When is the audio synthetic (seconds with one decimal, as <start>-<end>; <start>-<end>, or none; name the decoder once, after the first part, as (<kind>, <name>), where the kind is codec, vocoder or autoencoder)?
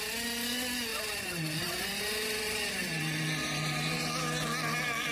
0.9-4.0 (vocoder, BigVGAN v2)